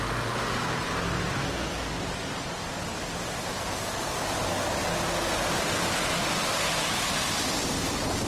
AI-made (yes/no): no